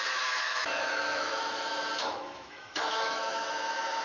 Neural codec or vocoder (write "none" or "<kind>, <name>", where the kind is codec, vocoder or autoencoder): autoencoder, DAC-VAE